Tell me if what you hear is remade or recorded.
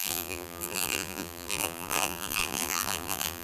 remade